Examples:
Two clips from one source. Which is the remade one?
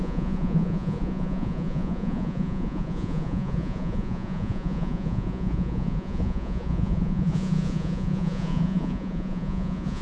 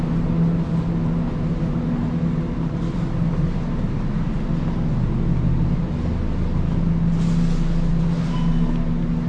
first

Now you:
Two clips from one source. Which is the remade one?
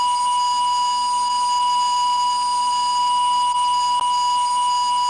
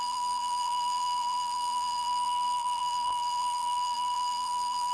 second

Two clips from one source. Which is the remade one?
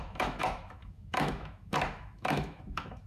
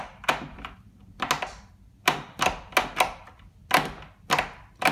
first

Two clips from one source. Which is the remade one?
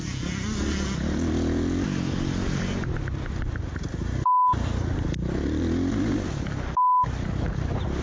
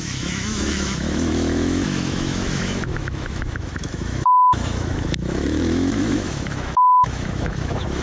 second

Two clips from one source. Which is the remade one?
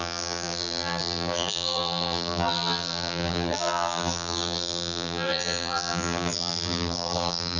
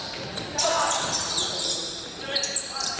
first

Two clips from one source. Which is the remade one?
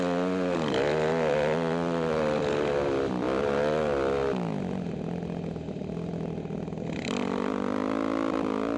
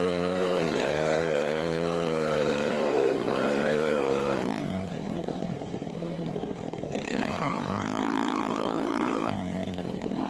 second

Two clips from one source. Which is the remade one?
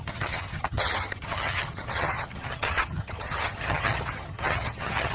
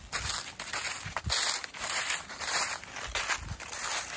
first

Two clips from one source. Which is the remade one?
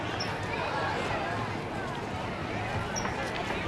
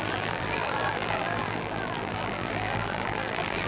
second